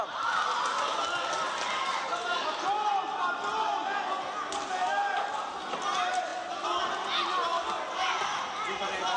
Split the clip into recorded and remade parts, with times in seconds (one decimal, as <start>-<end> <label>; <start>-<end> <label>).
0.0-9.2 recorded

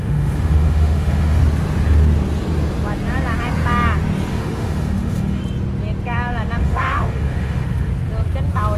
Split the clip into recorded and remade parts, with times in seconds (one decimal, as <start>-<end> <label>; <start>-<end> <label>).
0.0-1.4 remade; 1.4-4.3 recorded; 4.3-5.4 remade; 5.4-6.6 recorded; 6.6-7.9 remade; 7.9-8.8 recorded

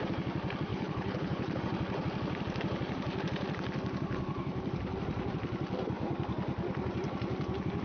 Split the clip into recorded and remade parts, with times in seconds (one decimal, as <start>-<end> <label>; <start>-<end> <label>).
0.0-0.7 recorded; 0.7-1.6 remade; 1.6-7.8 recorded

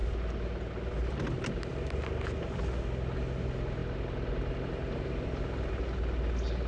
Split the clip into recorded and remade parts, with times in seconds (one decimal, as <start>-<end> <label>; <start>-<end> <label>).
0.0-6.7 recorded

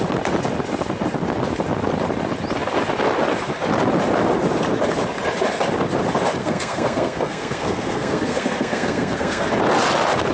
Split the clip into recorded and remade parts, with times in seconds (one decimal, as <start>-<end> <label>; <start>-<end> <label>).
0.0-6.4 recorded; 6.4-9.5 remade; 9.5-10.3 recorded